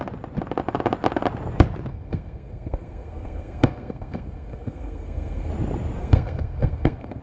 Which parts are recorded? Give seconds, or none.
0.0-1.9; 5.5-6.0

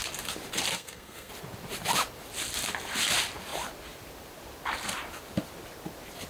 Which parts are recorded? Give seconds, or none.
0.0-0.7; 1.3-6.3

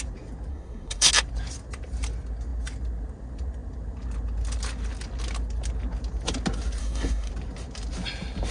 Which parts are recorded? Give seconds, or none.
0.0-0.5; 1.1-6.8; 7.3-8.5

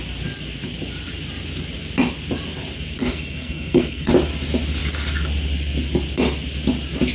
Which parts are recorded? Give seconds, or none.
0.0-3.0; 4.1-7.1